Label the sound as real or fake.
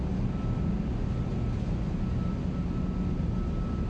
real